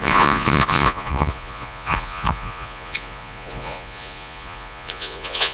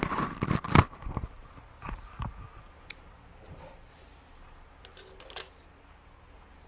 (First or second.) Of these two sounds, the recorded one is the second